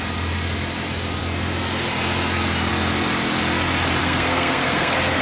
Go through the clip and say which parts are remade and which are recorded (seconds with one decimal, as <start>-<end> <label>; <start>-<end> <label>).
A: 0.0-4.0 recorded; 4.0-5.2 remade